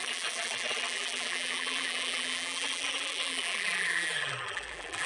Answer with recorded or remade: remade